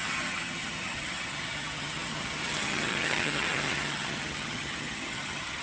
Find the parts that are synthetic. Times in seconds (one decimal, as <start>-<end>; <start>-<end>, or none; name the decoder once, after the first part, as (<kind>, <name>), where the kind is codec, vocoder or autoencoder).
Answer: 0.0-5.6 (vocoder, HiFi-GAN)